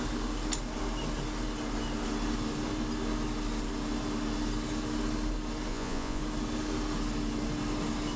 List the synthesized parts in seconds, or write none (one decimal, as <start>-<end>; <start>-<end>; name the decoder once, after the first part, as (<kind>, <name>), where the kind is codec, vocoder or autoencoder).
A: 5.7-6.2 (vocoder, Vocos)